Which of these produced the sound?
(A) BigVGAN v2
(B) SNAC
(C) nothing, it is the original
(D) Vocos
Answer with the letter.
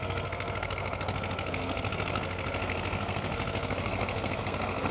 B